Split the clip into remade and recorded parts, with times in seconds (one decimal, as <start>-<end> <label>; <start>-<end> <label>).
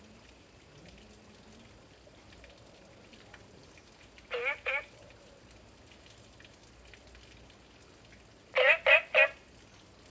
0.0-10.1 recorded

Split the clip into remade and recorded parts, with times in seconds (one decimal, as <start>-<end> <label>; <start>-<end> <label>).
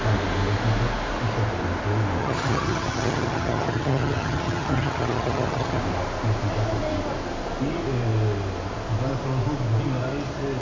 0.0-2.2 recorded; 2.2-5.8 remade; 5.8-10.6 recorded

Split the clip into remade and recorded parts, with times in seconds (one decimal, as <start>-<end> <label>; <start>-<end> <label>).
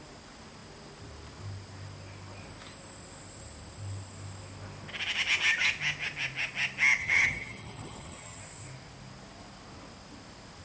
0.0-7.0 recorded; 7.0-8.4 remade; 8.4-10.6 recorded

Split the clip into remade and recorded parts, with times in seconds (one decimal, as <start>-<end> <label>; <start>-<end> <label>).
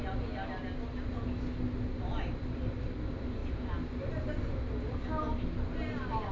0.0-6.3 recorded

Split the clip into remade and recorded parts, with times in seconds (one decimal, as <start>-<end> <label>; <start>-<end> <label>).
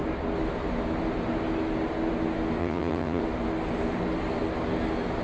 0.0-2.6 recorded; 2.6-3.2 remade; 3.2-5.2 recorded